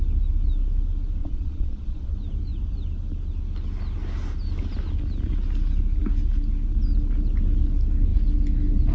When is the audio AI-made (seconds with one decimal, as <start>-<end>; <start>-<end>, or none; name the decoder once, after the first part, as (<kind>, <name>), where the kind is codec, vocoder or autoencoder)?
1.2-2.1 (vocoder, Vocos)